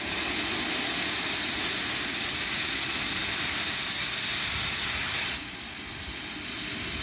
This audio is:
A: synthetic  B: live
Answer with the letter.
B